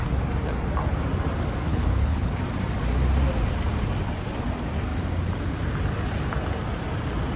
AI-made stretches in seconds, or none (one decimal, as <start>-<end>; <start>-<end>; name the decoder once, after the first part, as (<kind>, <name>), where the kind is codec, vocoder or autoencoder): 1.7-2.4 (codec, HILCodec)